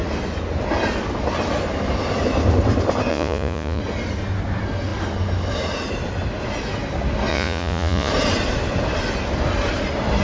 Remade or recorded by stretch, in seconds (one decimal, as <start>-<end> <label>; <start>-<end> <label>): 0.0-3.1 recorded; 3.1-3.8 remade; 3.8-7.3 recorded; 7.3-8.1 remade; 8.1-10.2 recorded